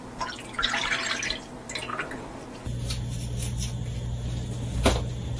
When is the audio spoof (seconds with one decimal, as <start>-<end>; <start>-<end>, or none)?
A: none